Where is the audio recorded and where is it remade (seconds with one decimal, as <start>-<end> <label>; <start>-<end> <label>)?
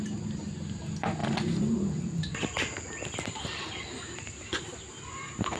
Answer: 0.0-1.2 recorded; 1.2-4.6 remade; 4.6-5.6 recorded